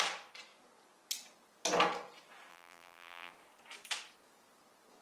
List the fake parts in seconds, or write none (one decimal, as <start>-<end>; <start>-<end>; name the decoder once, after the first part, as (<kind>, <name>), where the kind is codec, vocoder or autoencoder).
2.5-3.3 (vocoder, BigVGAN v2)